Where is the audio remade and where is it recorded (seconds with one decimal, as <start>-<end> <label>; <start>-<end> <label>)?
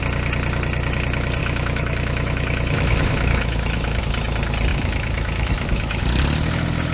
0.0-1.4 recorded; 1.4-4.0 remade; 4.0-4.7 recorded; 4.7-6.0 remade; 6.0-6.9 recorded